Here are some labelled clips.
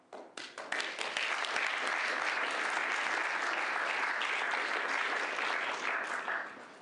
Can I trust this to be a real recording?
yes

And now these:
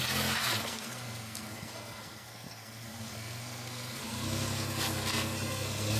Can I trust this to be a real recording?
no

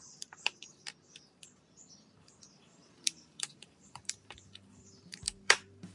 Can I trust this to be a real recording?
no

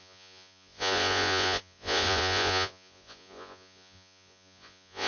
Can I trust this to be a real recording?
no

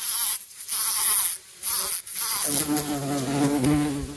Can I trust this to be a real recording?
yes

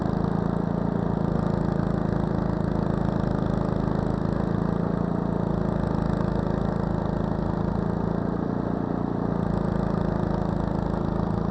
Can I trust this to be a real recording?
yes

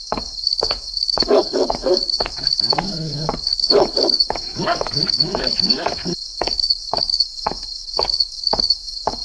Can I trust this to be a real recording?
no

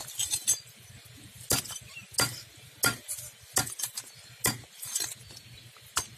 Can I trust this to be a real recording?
yes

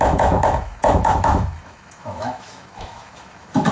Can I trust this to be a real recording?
no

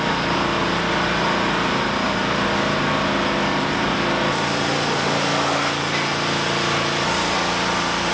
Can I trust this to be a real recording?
yes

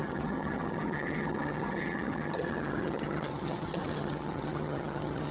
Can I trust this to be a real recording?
no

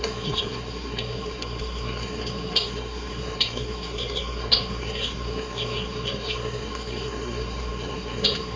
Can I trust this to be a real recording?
no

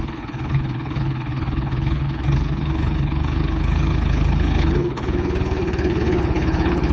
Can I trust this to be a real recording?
no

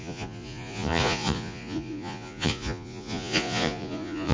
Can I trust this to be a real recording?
no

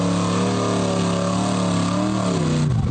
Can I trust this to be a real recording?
yes